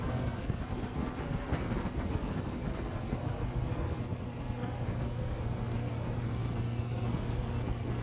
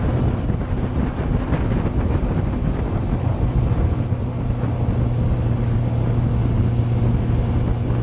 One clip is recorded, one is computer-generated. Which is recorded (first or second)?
second